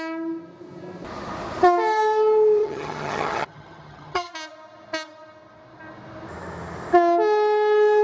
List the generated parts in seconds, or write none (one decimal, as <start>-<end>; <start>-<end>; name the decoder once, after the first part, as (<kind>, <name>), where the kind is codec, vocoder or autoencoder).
2.6-4.3 (vocoder, HiFi-GAN)